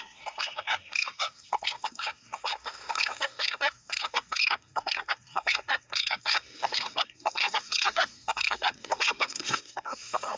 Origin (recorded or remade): remade